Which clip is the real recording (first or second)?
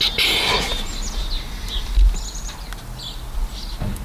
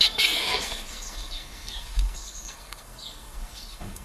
first